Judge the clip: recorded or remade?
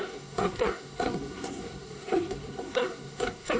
remade